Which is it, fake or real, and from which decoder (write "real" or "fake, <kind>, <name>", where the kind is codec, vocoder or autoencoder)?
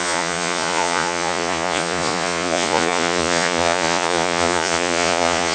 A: fake, vocoder, Vocos